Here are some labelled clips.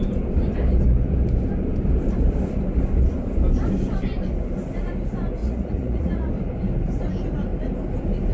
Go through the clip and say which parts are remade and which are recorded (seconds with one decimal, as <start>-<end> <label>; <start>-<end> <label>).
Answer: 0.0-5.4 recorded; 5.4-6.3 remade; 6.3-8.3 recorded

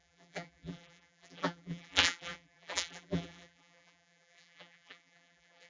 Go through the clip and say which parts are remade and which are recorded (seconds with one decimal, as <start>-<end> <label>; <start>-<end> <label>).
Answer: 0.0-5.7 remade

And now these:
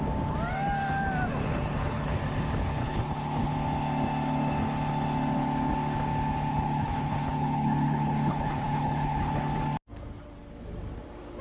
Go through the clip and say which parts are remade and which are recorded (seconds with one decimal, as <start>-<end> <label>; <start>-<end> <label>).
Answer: 0.0-1.4 recorded; 1.4-2.2 remade; 2.2-2.8 recorded; 2.8-3.5 remade; 3.5-6.5 recorded; 6.5-9.3 remade; 9.3-11.4 recorded